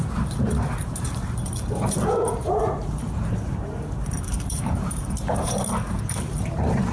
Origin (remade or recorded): remade